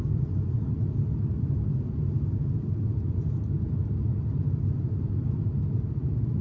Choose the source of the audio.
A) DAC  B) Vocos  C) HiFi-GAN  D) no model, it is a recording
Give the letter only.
D